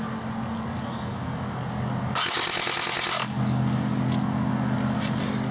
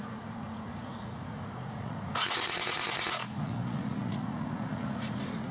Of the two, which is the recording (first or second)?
first